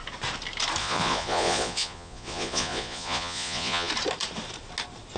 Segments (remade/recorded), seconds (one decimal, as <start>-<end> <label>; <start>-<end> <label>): 0.0-0.8 recorded; 0.8-3.9 remade; 3.9-5.2 recorded